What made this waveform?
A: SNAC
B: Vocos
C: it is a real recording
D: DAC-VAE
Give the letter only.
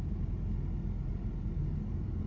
C